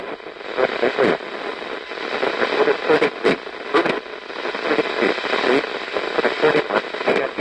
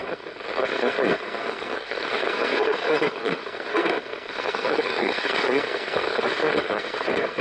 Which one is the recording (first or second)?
first